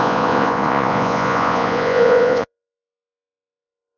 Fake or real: fake